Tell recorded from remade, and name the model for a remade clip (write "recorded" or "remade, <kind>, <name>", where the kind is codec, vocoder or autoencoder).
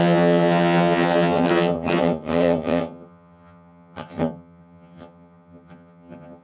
remade, vocoder, HiFi-GAN